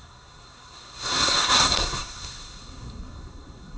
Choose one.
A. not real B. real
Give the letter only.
A